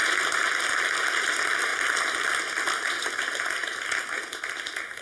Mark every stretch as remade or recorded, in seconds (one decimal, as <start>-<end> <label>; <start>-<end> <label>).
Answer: 0.0-5.0 recorded